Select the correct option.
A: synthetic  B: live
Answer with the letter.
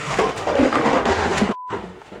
A